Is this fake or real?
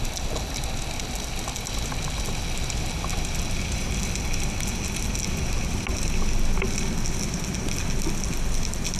real